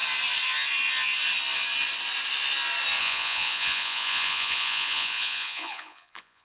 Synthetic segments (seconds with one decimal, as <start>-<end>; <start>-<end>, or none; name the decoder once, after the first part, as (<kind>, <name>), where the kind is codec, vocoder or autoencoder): 3.0-6.4 (vocoder, Vocos)